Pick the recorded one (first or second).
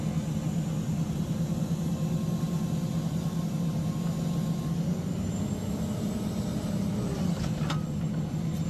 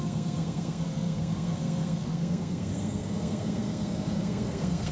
first